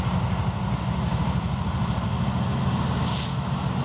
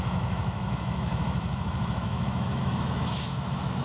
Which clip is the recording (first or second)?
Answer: first